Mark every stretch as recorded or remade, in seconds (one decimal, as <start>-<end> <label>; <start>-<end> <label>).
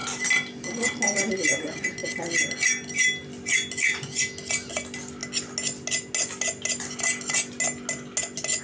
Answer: 0.0-8.6 recorded